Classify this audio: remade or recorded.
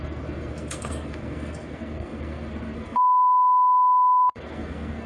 remade